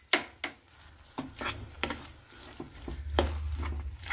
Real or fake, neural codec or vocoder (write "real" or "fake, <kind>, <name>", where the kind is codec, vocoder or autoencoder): real